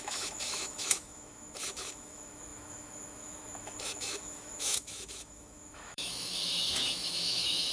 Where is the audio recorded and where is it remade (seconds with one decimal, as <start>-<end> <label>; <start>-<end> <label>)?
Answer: 0.0-7.7 remade